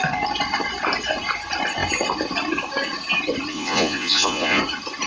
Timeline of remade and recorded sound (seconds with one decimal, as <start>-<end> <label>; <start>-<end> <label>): 0.0-3.5 recorded; 3.5-4.6 remade; 4.6-5.1 recorded